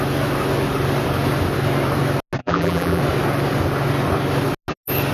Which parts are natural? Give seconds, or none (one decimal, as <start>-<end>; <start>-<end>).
0.0-2.4; 3.0-5.1